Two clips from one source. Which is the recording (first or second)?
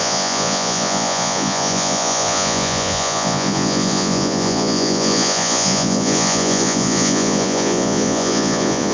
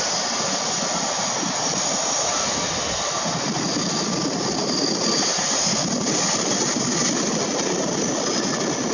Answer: second